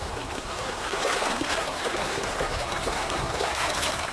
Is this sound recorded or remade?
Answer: remade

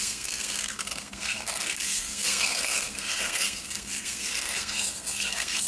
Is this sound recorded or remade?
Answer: remade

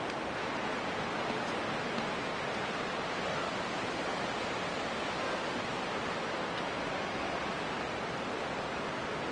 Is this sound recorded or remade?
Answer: recorded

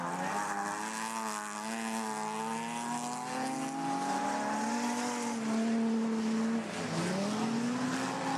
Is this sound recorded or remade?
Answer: recorded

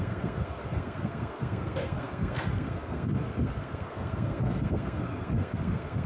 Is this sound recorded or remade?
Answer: remade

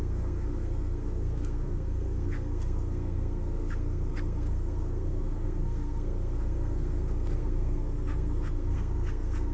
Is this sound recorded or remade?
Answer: remade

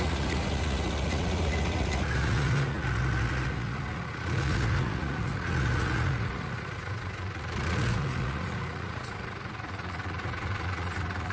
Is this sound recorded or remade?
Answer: remade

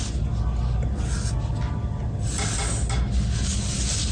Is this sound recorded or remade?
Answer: recorded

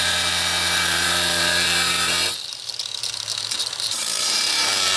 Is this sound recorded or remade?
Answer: remade